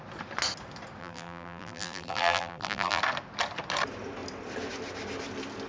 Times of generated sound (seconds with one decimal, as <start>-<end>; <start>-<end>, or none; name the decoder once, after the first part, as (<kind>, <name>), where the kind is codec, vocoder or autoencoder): 1.0-3.0 (vocoder, BigVGAN v2)